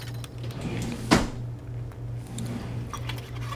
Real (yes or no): yes